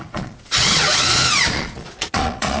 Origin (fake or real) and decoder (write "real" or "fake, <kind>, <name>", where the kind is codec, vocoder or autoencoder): fake, vocoder, Vocos